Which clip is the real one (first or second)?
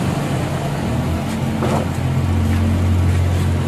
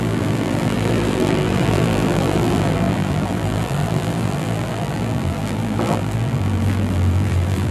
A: first